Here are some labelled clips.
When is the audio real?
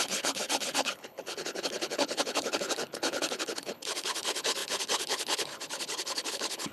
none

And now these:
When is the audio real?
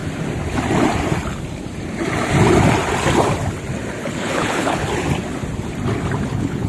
0.0-4.0; 4.8-6.3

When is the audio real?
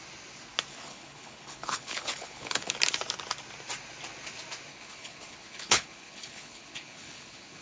0.0-0.7; 2.7-4.7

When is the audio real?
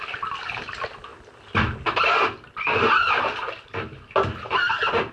0.0-5.1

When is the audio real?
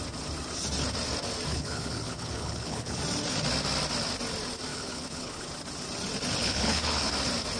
0.0-1.5; 3.0-4.7; 5.4-6.4; 7.1-7.6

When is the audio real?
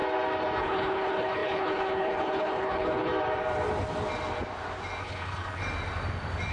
0.0-0.6; 3.1-5.0; 5.6-6.5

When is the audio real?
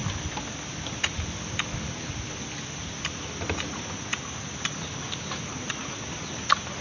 0.0-6.8